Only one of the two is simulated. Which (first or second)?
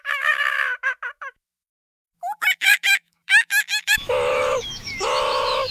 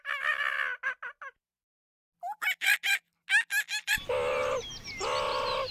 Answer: first